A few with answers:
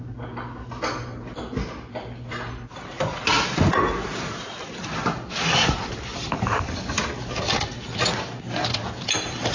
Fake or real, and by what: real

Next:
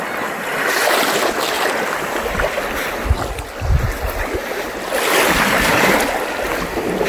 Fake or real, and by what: real